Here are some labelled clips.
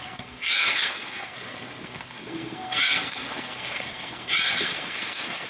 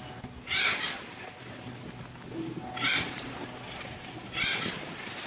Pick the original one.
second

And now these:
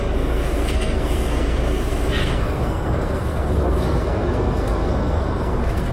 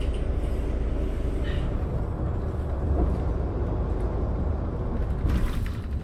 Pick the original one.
second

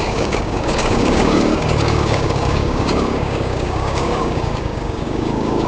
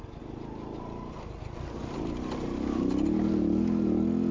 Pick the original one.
second